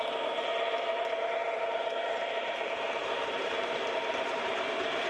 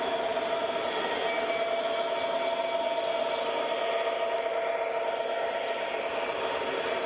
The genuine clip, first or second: second